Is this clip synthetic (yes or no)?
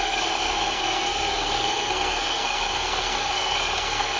yes